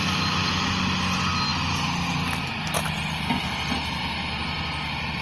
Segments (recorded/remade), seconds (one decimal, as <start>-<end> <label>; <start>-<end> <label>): 0.0-5.2 recorded